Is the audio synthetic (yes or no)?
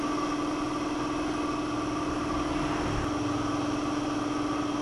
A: no